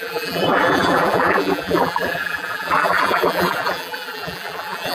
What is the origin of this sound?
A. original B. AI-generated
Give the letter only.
B